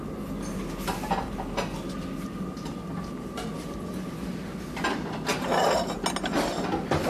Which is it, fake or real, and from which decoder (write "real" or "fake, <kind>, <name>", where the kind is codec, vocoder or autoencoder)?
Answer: real